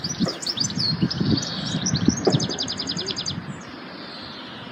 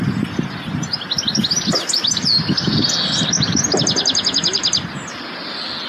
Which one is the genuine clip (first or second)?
second